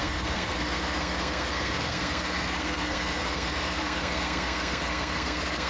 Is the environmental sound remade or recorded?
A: remade